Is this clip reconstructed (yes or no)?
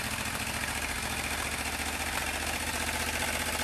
no